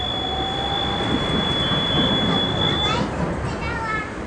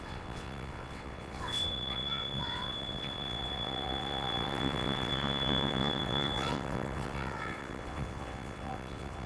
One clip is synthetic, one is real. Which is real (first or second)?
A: first